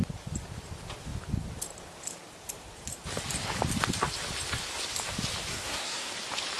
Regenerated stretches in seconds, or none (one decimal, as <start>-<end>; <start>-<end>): 5.5-6.1

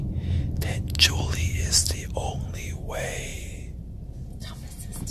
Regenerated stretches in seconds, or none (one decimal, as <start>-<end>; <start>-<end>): 3.3-4.5

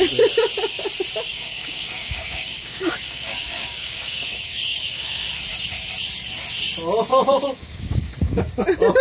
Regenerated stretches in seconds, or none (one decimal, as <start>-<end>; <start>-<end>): 1.3-5.3; 7.1-8.6

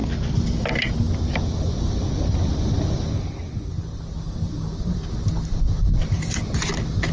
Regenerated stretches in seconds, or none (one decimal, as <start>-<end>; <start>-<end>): none

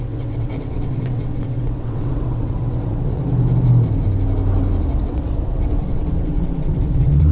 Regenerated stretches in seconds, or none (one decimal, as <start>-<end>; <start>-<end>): 0.0-3.2; 5.0-7.3